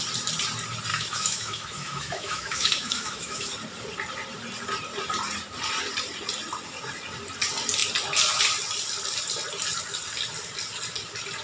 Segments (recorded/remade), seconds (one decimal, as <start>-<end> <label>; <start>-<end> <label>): 0.0-0.9 recorded; 0.9-3.5 remade; 3.5-11.4 recorded